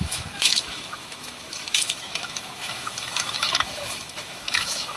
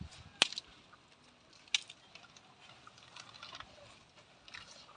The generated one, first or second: first